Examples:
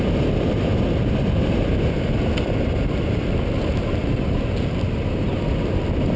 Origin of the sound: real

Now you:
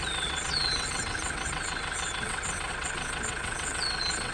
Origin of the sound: fake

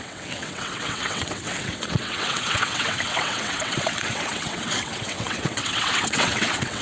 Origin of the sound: fake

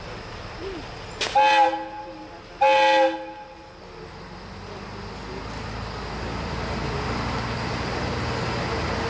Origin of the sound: real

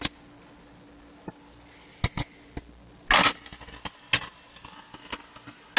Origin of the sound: real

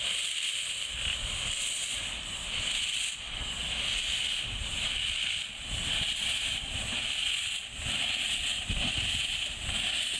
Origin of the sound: real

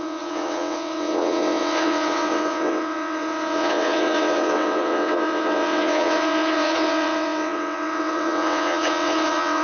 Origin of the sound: fake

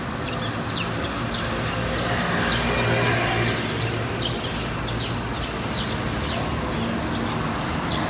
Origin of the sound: real